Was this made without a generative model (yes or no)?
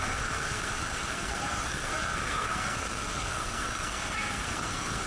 no